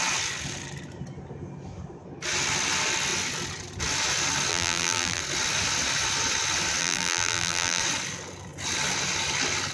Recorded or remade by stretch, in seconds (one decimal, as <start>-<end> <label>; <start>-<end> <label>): 0.0-4.5 recorded; 4.5-5.2 remade; 5.2-6.8 recorded; 6.8-7.8 remade; 7.8-9.7 recorded